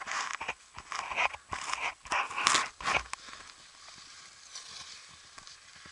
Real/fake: real